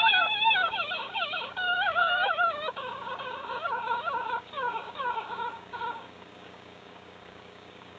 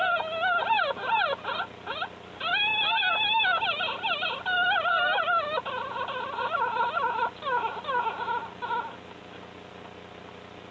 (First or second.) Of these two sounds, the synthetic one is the first